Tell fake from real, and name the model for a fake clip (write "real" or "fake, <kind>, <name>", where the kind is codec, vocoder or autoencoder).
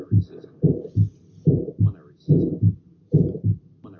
real